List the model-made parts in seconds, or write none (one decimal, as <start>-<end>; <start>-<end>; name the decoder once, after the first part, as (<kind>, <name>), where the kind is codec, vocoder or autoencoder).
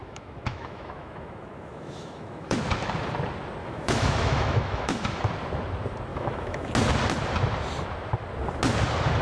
0.0-2.6 (autoencoder, DAC-VAE); 3.6-5.2; 6.1-6.7